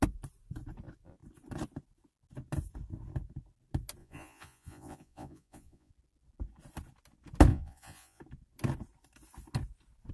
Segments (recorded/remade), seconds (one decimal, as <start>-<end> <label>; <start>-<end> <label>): 0.0-4.0 recorded; 4.0-5.9 remade; 5.9-7.5 recorded; 7.5-8.2 remade; 8.2-10.1 recorded

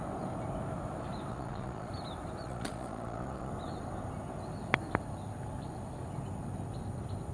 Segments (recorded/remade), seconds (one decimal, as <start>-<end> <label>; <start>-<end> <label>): 0.0-1.3 recorded; 1.3-1.9 remade; 1.9-2.4 recorded; 2.4-3.5 remade; 3.5-7.3 recorded

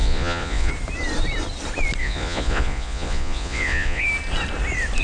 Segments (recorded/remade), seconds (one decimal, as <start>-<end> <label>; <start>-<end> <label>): 0.0-0.7 remade; 0.7-2.0 recorded; 2.0-4.0 remade; 4.0-5.0 recorded

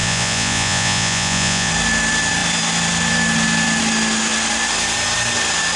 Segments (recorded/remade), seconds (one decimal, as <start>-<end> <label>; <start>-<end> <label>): 0.0-1.7 remade; 1.7-5.8 recorded

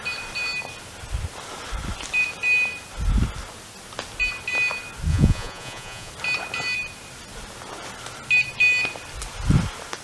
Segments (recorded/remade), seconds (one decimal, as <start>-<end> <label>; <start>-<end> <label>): 0.0-5.1 recorded; 5.1-6.1 remade; 6.1-10.0 recorded

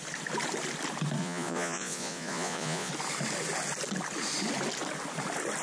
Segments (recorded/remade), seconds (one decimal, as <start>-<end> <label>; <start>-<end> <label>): 0.0-1.2 recorded; 1.2-2.9 remade; 2.9-5.6 recorded

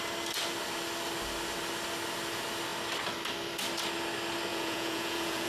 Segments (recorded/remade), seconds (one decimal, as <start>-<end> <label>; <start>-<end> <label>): 0.0-4.5 recorded; 4.5-5.5 remade